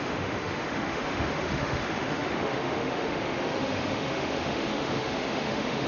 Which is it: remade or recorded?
remade